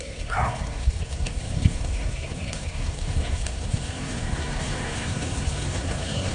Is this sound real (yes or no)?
no